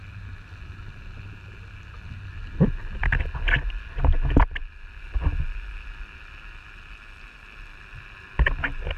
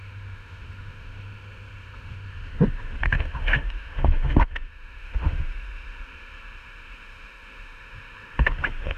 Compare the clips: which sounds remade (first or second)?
second